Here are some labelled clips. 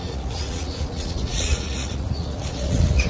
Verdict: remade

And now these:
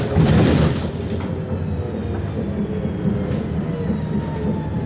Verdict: recorded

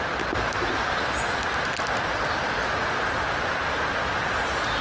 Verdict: recorded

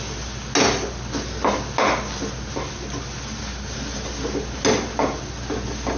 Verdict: recorded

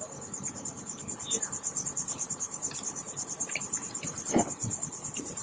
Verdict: recorded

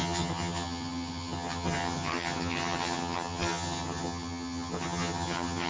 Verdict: remade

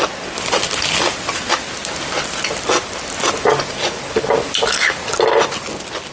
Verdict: recorded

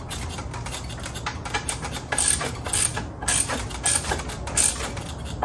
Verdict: recorded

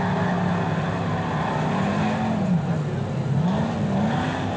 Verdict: recorded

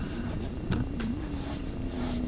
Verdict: remade